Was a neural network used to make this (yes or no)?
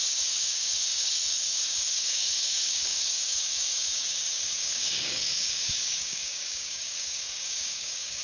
yes